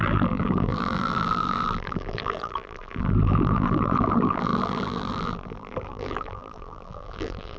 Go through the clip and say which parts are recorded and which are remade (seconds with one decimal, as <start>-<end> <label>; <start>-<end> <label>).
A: 0.0-7.6 remade